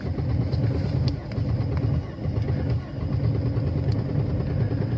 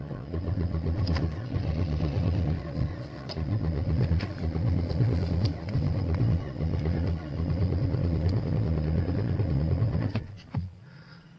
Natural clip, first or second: first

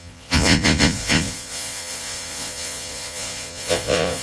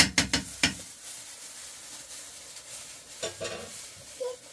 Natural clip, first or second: second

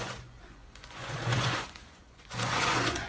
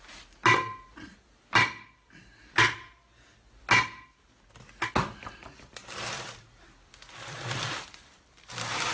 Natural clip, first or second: second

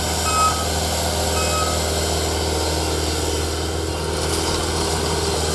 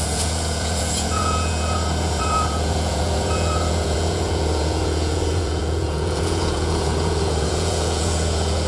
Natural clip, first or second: first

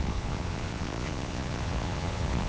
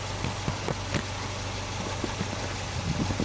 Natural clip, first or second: second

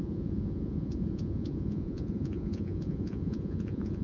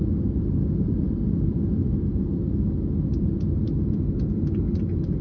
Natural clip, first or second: second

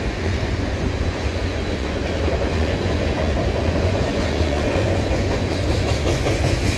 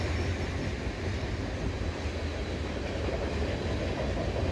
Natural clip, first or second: second